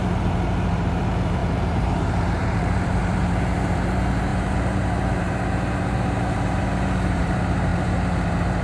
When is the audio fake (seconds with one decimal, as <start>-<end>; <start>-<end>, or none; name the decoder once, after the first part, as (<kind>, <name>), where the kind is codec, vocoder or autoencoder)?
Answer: 0.0-8.6 (vocoder, BigVGAN v2)